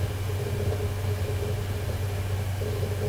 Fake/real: real